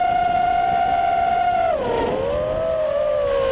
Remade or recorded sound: recorded